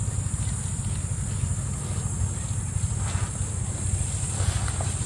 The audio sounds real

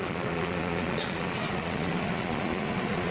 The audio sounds fake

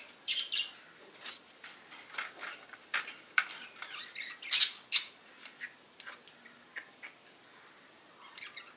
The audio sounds fake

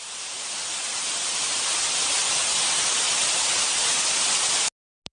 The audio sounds real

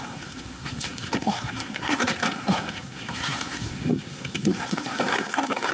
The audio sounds fake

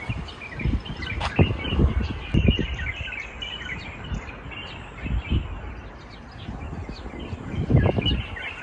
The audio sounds real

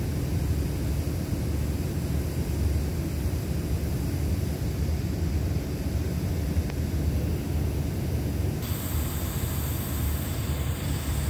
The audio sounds real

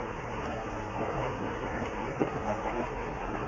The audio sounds fake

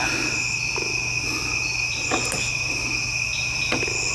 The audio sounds real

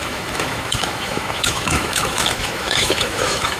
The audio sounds fake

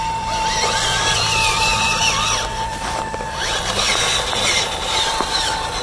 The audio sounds fake